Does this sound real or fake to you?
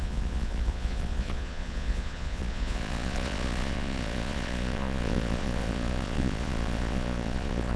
fake